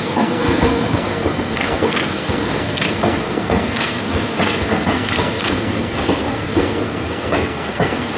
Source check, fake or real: fake